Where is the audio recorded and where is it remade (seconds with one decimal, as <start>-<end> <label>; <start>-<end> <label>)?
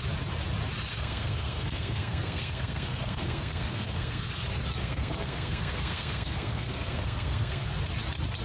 0.0-0.9 recorded; 0.9-4.3 remade; 4.3-4.8 recorded; 4.8-7.7 remade; 7.7-8.4 recorded